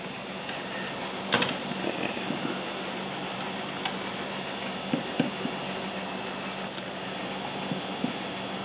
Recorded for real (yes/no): yes